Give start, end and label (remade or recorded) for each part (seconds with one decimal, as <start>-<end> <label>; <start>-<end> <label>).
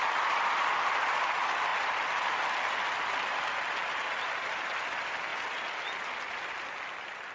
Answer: 0.0-7.3 recorded